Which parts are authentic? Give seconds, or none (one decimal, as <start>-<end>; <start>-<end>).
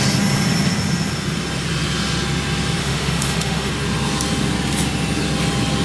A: 0.0-2.8; 3.7-5.8